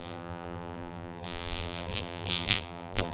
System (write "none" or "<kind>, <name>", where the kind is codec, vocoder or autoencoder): vocoder, BigVGAN v2